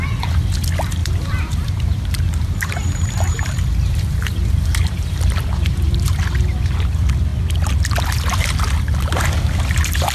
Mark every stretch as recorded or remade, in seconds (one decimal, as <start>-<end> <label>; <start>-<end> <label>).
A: 0.0-1.0 recorded; 1.0-6.2 remade; 6.2-10.1 recorded